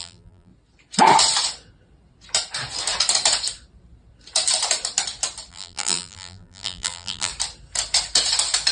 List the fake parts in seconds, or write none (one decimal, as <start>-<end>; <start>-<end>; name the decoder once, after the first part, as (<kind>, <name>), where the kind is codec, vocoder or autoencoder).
0.0-0.5 (vocoder, BigVGAN v2); 5.5-7.3